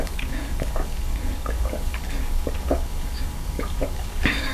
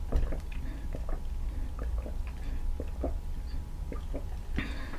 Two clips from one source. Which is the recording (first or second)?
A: second